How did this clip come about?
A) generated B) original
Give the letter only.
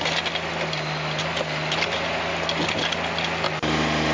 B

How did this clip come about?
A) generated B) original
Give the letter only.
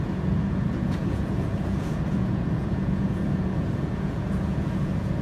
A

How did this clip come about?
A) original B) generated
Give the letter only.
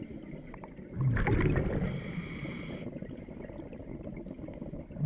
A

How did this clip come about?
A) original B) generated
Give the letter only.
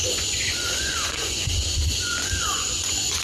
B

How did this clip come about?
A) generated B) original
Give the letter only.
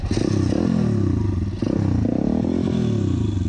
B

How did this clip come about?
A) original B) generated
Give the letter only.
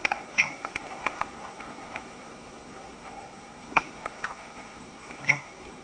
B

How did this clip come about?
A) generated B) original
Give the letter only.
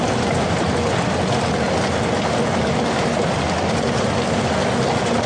B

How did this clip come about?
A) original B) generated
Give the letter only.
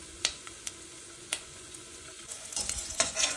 B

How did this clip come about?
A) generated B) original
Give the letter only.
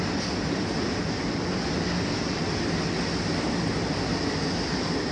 B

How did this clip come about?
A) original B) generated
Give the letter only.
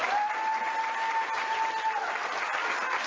A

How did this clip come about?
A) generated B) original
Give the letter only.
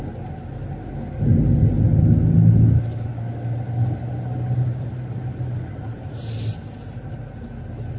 B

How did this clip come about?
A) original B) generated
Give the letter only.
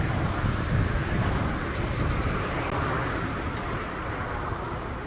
A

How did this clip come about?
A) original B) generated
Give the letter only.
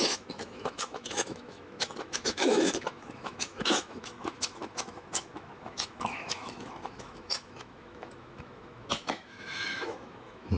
B